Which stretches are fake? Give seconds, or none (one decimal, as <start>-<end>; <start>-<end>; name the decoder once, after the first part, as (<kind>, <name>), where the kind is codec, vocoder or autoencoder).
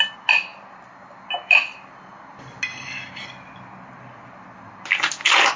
none